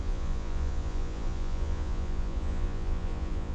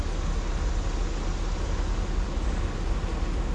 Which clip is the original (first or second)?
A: second